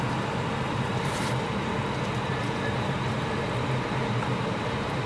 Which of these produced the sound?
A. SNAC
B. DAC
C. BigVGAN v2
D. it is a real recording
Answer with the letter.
C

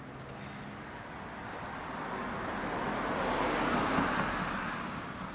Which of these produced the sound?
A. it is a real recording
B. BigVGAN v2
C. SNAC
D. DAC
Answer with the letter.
A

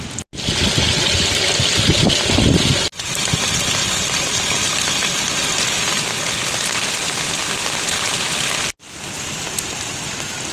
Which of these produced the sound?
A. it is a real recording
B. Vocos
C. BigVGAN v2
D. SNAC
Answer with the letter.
A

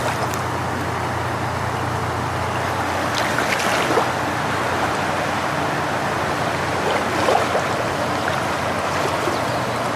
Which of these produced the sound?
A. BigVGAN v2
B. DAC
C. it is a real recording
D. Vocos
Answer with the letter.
C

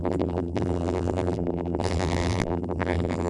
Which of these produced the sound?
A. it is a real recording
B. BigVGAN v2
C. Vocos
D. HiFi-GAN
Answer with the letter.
B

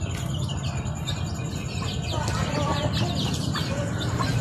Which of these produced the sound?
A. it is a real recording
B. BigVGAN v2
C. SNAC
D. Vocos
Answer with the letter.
A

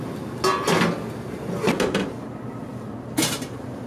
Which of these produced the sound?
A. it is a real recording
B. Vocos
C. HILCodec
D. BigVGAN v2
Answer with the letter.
A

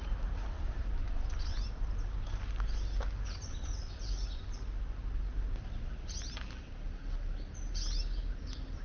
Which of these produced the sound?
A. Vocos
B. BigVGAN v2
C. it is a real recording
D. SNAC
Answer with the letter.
C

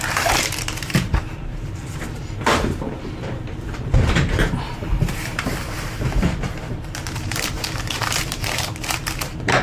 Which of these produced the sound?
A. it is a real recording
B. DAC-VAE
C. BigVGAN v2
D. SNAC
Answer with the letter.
C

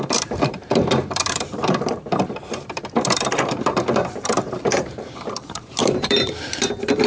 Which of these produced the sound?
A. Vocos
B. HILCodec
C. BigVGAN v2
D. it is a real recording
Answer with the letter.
C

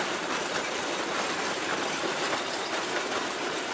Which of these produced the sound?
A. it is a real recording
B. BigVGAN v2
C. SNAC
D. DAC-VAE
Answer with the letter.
B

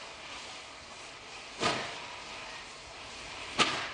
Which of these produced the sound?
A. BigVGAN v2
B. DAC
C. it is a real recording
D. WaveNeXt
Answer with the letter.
C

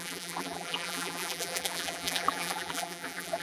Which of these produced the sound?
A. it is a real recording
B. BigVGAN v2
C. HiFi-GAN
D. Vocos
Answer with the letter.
B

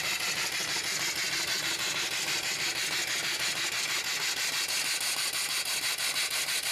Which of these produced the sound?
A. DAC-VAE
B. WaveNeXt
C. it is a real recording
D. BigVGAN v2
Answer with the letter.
C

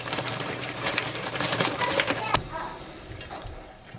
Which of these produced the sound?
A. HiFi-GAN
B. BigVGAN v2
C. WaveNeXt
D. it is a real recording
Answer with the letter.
B